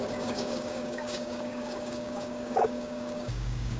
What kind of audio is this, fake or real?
fake